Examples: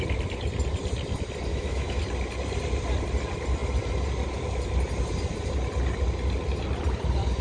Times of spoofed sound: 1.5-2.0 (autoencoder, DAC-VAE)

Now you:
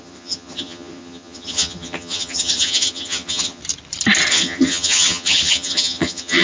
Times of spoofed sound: 0.0-3.6 (vocoder, HiFi-GAN); 4.3-6.4

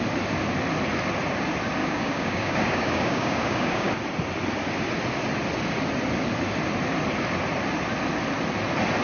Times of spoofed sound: 1.8-3.9 (codec, DAC)

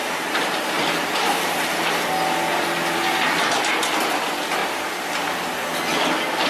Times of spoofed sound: 0.0-1.7 (vocoder, BigVGAN v2); 4.6-5.6

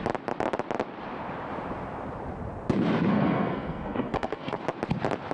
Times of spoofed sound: 3.1-4.6 (codec, SNAC)

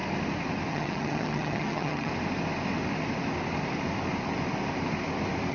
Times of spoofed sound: 0.7-2.1 (vocoder, HiFi-GAN)

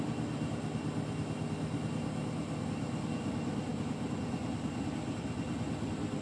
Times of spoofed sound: none